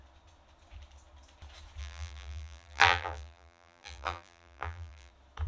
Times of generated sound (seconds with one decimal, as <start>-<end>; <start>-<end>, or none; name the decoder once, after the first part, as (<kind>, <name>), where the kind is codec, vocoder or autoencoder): 1.8-5.1 (vocoder, BigVGAN v2)